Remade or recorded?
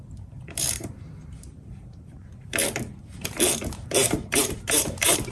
remade